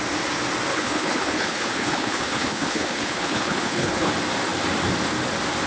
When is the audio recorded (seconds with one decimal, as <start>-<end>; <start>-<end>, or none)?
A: 0.0-0.7; 4.1-5.7